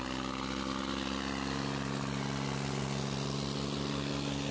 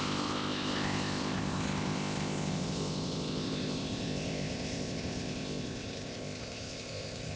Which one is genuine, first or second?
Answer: first